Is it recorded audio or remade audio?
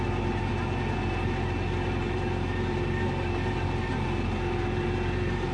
recorded